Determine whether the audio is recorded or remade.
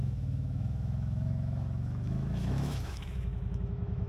remade